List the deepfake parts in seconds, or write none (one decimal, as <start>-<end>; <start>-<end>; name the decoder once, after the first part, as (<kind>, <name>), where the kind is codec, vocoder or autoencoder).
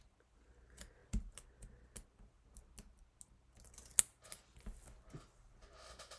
none